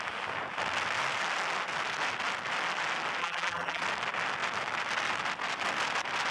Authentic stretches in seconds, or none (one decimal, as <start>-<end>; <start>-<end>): 0.0-3.2; 3.8-6.3